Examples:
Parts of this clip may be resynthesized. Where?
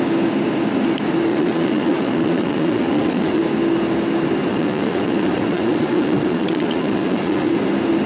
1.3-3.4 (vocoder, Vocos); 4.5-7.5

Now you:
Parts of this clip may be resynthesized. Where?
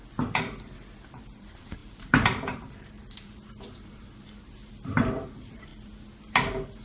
1.4-5.7 (vocoder, BigVGAN v2); 6.3-6.8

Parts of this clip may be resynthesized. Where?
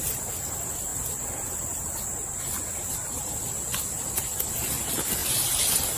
none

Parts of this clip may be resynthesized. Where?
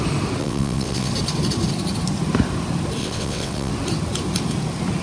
0.4-1.1 (vocoder, WaveNeXt); 3.0-3.7